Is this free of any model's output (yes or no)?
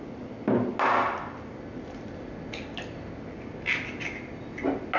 yes